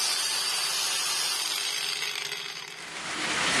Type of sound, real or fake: real